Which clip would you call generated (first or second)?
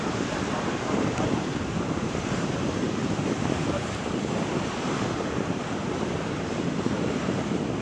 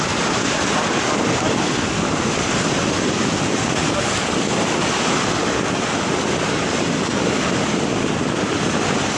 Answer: first